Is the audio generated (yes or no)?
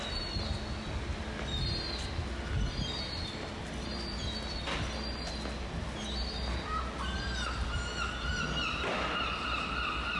no